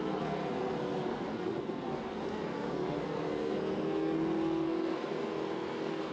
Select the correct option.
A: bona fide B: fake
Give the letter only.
B